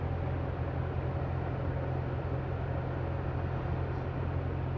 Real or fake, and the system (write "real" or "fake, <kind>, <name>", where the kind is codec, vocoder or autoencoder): real